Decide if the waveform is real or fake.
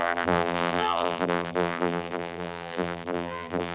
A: fake